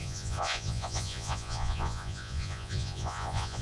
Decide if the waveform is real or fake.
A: fake